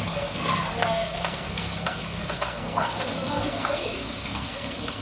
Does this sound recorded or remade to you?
remade